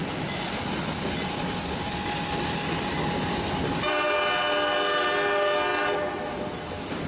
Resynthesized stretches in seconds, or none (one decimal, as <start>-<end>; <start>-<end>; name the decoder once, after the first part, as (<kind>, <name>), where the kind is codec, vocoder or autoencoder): none